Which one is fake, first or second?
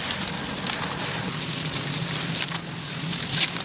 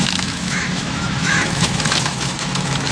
second